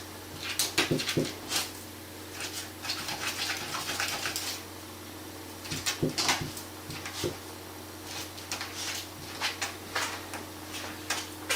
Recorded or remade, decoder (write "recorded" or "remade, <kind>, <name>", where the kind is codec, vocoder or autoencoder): recorded